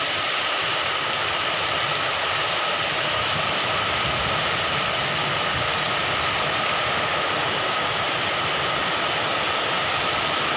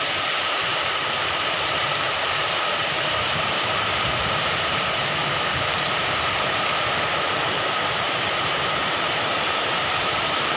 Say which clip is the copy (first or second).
second